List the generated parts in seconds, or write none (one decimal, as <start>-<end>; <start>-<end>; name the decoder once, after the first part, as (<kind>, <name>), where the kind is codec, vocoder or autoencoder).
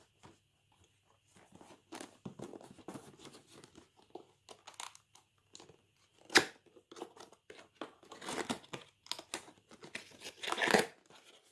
none